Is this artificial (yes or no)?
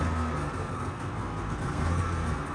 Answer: yes